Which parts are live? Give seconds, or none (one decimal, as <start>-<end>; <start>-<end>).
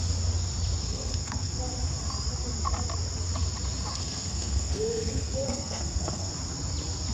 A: 0.0-0.8; 1.6-3.9; 6.3-7.1